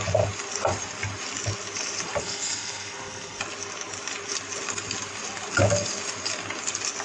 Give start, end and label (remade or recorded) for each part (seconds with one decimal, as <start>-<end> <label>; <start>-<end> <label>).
0.0-2.2 recorded; 2.2-3.4 remade; 3.4-7.0 recorded

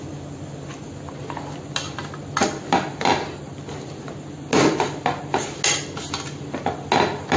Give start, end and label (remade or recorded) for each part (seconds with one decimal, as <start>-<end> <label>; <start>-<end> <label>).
0.0-7.4 recorded

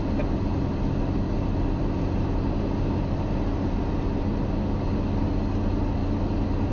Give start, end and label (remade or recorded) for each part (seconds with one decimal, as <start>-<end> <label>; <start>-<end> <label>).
0.0-6.7 recorded

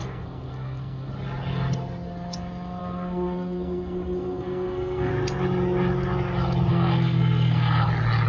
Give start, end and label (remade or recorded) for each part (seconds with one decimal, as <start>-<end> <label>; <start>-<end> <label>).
0.0-1.1 remade; 1.1-2.8 recorded; 2.8-5.1 remade; 5.1-6.7 recorded; 6.7-7.9 remade; 7.9-8.3 recorded

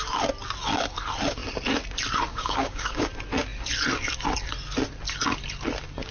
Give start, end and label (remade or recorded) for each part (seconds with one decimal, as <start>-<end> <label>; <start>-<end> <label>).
0.0-2.3 recorded; 2.3-3.1 remade; 3.1-6.1 recorded

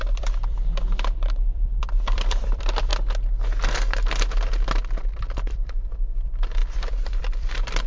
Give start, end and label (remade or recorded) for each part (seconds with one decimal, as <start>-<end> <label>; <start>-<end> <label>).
0.0-2.9 remade; 2.9-5.0 recorded; 5.0-7.9 remade

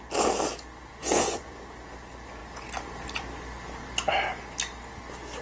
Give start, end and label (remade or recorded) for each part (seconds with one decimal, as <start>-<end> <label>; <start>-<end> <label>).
0.0-0.9 recorded; 0.9-1.5 remade; 1.5-5.4 recorded